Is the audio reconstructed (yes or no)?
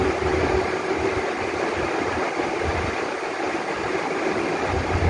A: yes